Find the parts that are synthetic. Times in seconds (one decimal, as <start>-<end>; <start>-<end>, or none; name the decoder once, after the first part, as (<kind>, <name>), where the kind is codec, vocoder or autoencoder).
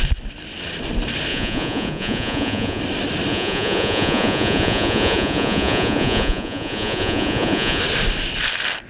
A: 1.3-2.8 (vocoder, Vocos); 3.3-7.8